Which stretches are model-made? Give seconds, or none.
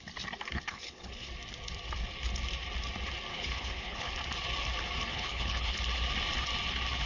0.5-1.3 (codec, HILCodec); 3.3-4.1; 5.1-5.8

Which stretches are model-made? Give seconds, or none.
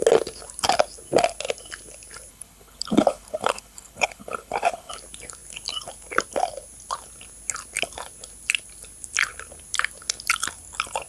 2.3-4.9 (codec, HILCodec)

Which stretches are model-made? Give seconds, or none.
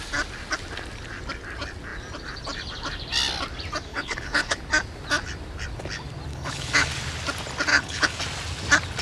3.9-4.6 (codec, HILCodec); 6.3-6.9; 7.7-8.2